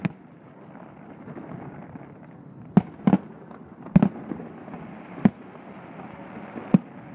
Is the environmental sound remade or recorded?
recorded